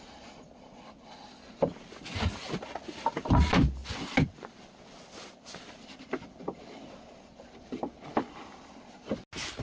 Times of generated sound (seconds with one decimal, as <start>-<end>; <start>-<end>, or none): none